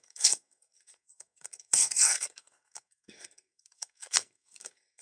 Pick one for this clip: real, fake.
fake